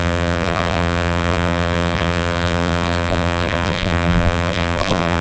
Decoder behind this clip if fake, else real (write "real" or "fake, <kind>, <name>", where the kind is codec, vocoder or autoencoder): fake, vocoder, BigVGAN v2